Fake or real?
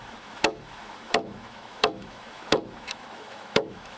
fake